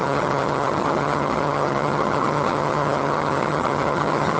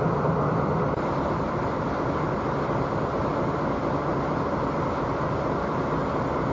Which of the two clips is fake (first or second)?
first